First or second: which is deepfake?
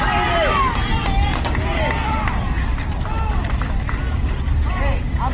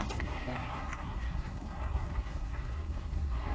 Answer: second